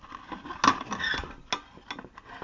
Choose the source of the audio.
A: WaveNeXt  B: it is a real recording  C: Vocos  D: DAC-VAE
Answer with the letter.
B